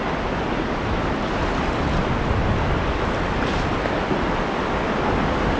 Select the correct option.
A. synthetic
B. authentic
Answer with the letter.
B